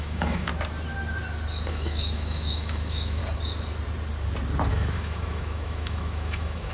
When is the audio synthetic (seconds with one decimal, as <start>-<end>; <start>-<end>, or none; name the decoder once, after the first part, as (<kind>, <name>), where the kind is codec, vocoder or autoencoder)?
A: 0.0-0.5 (autoencoder, DAC-VAE); 1.7-3.2; 4.7-6.7